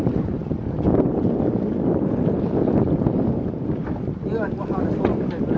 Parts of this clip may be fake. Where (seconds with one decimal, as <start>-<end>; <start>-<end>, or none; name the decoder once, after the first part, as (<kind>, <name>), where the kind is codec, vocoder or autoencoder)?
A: none